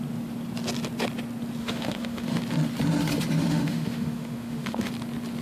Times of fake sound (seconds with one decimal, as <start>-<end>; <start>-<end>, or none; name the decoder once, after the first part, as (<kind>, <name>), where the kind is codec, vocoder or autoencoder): 1.6-2.4 (autoencoder, DAC-VAE); 3.4-4.9